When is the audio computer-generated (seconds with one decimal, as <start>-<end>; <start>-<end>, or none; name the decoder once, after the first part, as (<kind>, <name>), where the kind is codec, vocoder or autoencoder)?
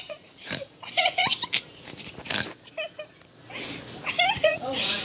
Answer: 0.0-1.3 (vocoder, Vocos); 4.3-5.0